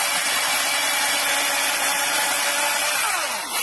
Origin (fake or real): real